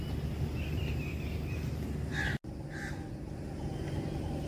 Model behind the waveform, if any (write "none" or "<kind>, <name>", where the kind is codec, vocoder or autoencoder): none